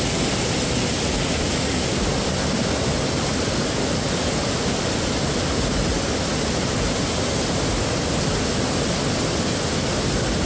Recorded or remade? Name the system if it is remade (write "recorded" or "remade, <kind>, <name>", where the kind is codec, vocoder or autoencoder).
recorded